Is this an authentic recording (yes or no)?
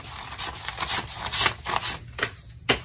yes